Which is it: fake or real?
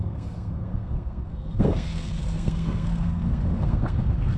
fake